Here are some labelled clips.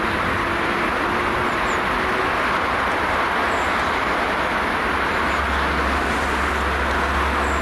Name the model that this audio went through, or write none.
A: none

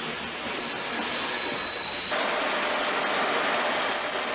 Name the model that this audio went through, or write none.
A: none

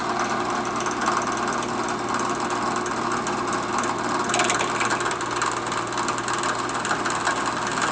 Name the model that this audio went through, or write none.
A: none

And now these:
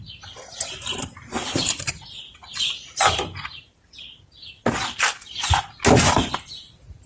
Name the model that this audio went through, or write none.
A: none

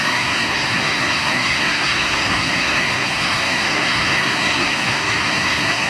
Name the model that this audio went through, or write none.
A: codec, SNAC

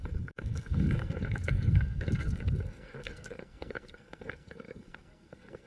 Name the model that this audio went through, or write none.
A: codec, SNAC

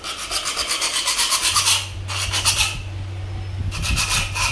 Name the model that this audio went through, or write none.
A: none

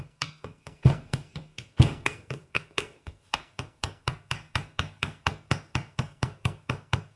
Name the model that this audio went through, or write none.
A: codec, SNAC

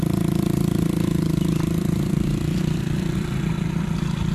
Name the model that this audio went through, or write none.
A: none